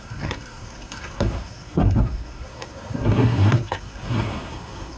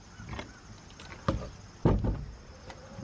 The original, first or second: second